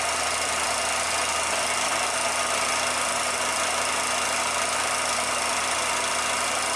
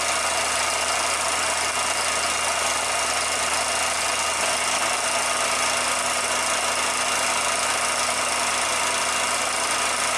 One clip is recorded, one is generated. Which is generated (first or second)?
first